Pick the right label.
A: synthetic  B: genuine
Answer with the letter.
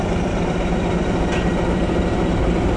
B